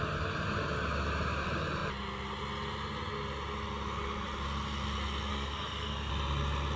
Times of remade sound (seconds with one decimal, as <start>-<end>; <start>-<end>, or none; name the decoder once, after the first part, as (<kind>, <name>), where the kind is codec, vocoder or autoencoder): 5.3-6.1 (codec, SNAC)